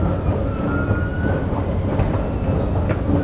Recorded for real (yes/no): yes